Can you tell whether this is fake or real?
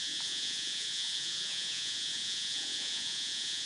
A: fake